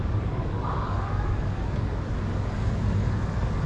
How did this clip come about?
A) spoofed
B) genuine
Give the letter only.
A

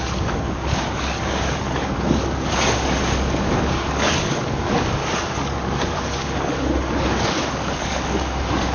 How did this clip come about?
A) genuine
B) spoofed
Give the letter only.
B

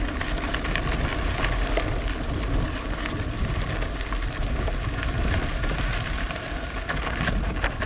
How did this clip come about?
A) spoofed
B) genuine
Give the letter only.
B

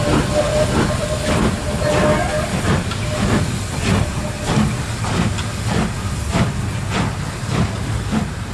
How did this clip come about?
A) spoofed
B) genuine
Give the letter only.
B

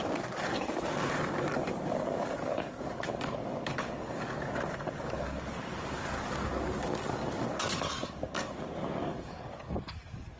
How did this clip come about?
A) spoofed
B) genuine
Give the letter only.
A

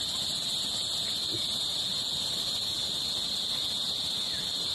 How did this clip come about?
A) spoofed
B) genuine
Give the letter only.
B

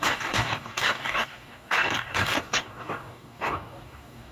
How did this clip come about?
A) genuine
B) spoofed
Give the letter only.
B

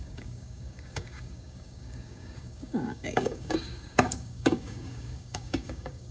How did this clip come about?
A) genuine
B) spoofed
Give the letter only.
B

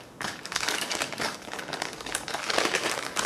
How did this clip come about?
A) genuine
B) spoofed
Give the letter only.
B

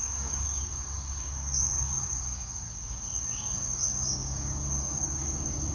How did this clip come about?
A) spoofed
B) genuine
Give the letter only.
A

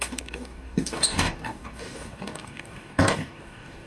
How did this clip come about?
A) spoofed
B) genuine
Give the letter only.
A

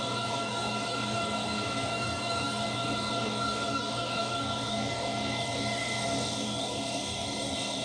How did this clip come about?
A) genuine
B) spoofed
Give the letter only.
B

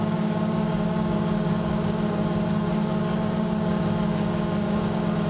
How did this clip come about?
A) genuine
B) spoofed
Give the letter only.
B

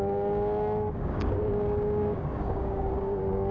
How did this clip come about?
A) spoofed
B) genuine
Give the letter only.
A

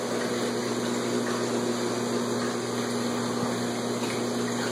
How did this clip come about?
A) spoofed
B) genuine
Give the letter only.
B